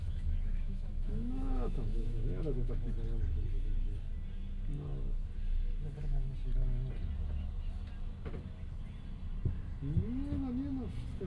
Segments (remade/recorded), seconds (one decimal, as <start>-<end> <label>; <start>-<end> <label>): 0.0-2.9 remade; 2.9-11.3 recorded